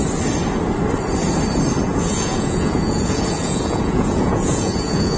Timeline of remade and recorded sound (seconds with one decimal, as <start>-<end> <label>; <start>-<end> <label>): 0.0-1.9 recorded; 1.9-5.2 remade

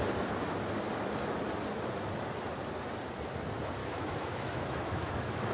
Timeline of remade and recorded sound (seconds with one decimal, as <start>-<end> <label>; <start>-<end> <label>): 0.0-3.8 recorded; 3.8-5.5 remade

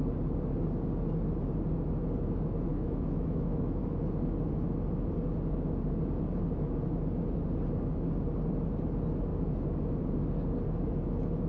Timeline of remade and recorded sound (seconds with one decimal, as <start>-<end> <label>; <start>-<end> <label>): 0.0-2.7 recorded; 2.7-3.8 remade; 3.8-11.5 recorded

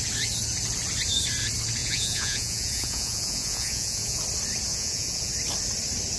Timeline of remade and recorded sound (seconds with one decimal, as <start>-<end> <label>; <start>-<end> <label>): 0.0-1.8 recorded; 1.8-4.2 remade; 4.2-4.7 recorded; 4.7-5.3 remade; 5.3-6.2 recorded

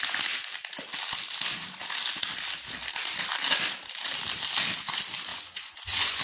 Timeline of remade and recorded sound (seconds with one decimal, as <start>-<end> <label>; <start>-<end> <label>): 0.0-5.3 recorded; 5.3-6.2 remade

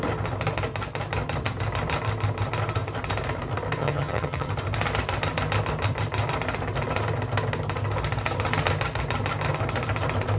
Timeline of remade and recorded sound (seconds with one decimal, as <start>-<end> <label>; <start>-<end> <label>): 0.0-3.8 recorded; 3.8-4.5 remade; 4.5-10.4 recorded